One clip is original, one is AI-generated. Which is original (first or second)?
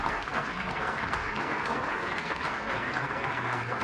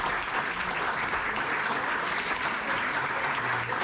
second